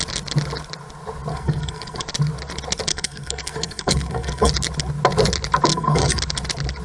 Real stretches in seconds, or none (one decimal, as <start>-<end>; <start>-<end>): 0.0-1.3; 2.0-2.9; 4.5-5.7; 6.2-6.8